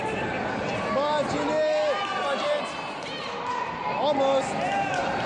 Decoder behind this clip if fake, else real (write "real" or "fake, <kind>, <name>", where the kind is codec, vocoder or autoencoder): real